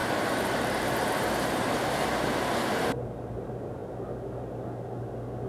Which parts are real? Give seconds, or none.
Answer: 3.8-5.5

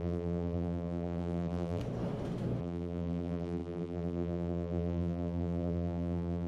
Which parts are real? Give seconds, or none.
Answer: 1.8-2.6

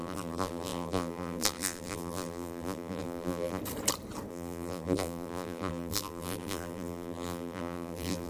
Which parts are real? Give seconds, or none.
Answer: 3.6-4.3

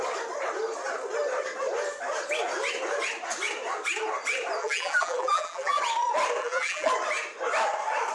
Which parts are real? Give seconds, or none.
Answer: 0.0-4.6; 5.8-6.4; 6.9-8.1

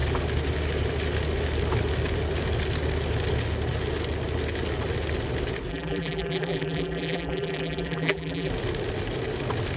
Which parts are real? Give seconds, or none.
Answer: 0.0-5.7; 8.5-9.8

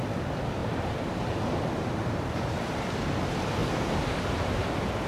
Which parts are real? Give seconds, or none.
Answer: 0.0-0.6; 2.9-3.6; 4.6-5.1

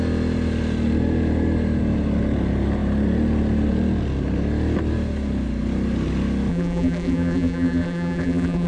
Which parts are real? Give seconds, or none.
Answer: 0.0-6.5

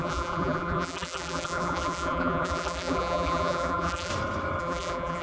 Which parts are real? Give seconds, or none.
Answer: 4.1-4.6